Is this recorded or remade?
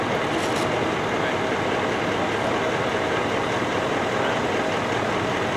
recorded